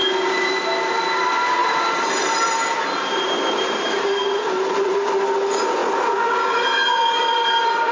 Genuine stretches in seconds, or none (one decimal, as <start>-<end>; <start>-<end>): 0.0-1.6; 5.2-7.9